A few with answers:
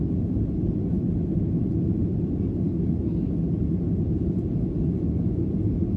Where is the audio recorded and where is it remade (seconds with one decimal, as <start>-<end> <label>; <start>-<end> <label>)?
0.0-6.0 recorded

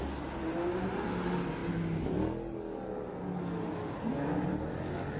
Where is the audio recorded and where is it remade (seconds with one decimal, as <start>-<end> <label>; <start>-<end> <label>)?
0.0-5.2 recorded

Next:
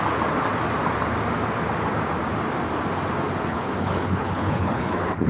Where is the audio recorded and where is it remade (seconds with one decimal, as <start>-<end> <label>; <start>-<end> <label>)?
0.0-3.5 recorded; 3.5-5.3 remade